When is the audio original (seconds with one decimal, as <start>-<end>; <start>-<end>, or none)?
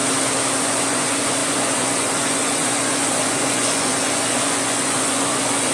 0.0-0.6